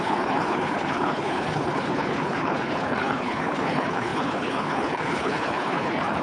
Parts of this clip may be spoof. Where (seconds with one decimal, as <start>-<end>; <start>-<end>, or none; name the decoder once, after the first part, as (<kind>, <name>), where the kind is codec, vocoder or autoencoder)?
0.0-6.2 (codec, HILCodec)